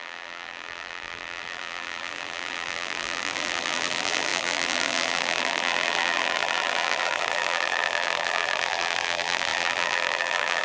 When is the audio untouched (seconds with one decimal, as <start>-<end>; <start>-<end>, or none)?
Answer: none